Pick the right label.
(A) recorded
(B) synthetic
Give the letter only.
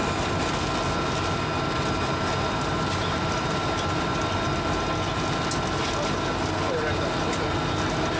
A